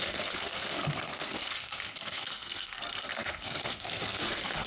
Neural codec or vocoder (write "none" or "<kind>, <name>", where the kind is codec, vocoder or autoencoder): codec, SNAC